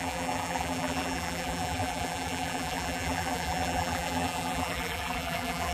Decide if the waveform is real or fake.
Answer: fake